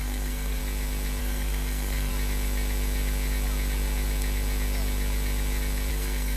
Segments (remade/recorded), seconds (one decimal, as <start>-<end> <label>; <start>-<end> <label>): 0.0-0.6 remade; 0.6-1.2 recorded; 1.2-2.1 remade; 2.1-5.9 recorded; 5.9-6.4 remade